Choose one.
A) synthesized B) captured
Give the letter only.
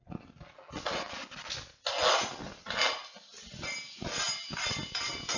B